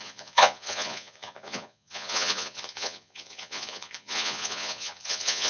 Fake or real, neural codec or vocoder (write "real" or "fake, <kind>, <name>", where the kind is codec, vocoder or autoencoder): fake, vocoder, Vocos